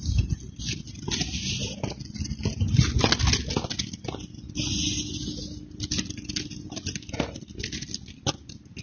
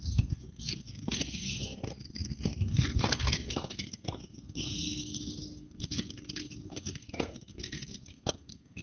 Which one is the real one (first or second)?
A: first